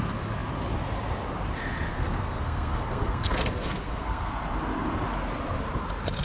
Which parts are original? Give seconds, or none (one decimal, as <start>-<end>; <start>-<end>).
0.0-1.9; 4.3-6.2